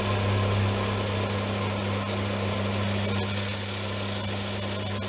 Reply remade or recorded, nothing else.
recorded